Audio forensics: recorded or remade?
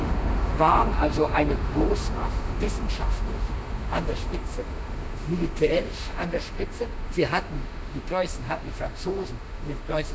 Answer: remade